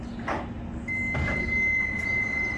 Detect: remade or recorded recorded